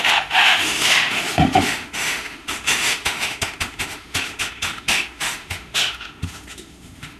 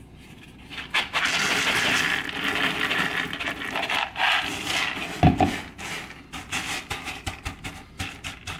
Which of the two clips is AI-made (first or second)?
first